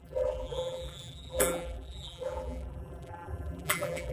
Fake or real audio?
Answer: fake